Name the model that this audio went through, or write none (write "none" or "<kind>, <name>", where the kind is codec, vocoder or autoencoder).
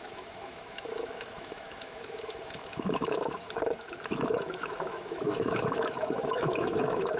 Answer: autoencoder, DAC-VAE